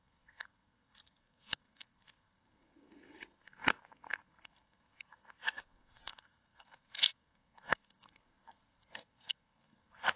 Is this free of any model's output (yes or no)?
no